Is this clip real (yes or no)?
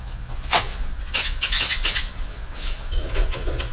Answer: no